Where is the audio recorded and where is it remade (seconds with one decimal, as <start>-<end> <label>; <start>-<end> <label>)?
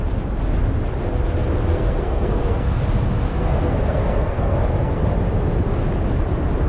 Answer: 0.0-1.7 recorded; 1.7-2.8 remade; 2.8-3.3 recorded; 3.3-5.0 remade; 5.0-6.7 recorded